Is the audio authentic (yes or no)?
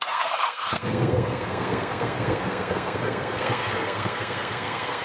no